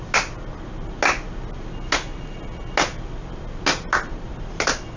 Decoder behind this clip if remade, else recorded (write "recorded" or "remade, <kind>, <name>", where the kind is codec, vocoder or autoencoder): recorded